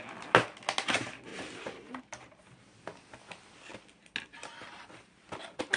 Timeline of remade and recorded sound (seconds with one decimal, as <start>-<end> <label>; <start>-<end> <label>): 0.0-5.8 recorded